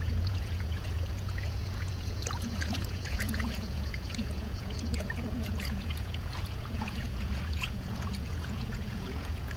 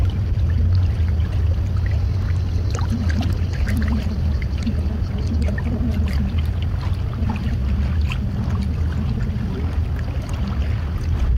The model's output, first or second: first